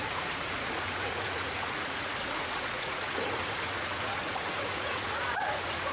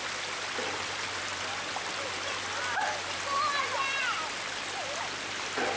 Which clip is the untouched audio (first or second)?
second